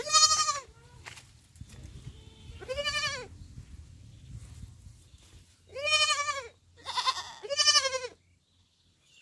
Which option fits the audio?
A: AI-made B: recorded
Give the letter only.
B